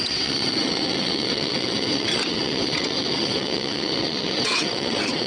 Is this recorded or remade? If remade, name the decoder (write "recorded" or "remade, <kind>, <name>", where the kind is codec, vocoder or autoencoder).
remade, vocoder, WaveNeXt